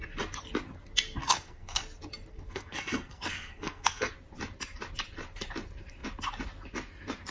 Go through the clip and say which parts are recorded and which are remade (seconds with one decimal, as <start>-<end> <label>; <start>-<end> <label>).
0.0-1.2 recorded; 1.2-1.8 remade; 1.8-2.3 recorded; 2.3-4.1 remade; 4.1-7.3 recorded